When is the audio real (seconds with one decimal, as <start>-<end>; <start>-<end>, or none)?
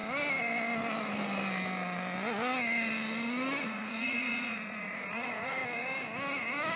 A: 0.0-3.6; 5.6-6.8